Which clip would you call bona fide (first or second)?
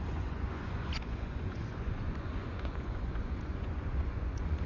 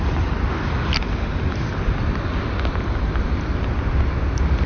second